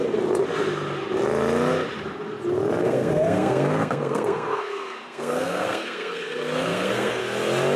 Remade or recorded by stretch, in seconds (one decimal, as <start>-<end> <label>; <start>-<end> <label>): 0.0-2.8 recorded; 2.8-7.2 remade; 7.2-7.8 recorded